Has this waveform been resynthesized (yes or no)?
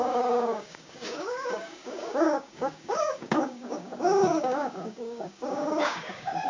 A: yes